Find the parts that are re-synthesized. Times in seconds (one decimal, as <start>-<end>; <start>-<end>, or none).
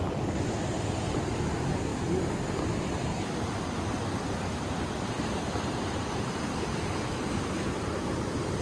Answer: none